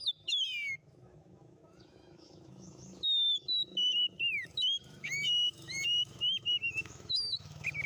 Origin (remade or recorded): remade